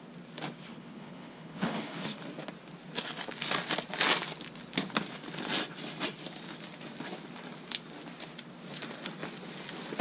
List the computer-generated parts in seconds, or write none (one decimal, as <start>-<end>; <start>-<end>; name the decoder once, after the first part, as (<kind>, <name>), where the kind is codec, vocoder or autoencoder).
0.7-2.2 (codec, HILCodec)